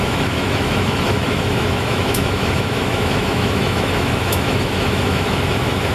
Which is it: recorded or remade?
remade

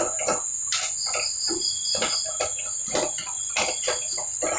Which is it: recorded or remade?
recorded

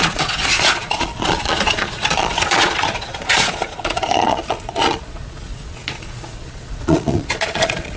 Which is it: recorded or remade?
remade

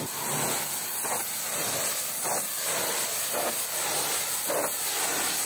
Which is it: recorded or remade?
recorded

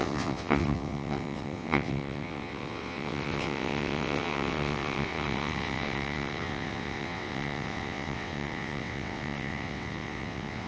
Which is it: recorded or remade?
remade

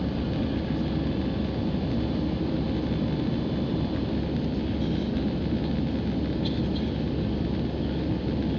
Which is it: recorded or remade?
recorded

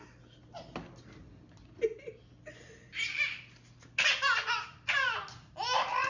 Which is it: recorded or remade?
recorded